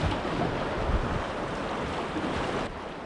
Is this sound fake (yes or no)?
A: no